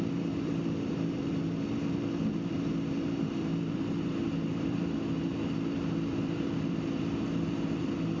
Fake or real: fake